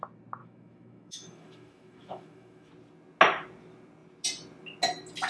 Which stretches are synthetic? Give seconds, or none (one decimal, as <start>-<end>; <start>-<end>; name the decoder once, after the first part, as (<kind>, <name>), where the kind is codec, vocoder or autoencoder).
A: 0.4-2.7 (autoencoder, DAC-VAE)